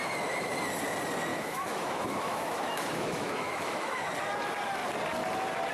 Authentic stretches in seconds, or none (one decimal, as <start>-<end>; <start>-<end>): 0.0-1.3; 4.0-5.7